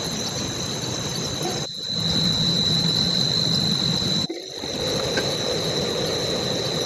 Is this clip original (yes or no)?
yes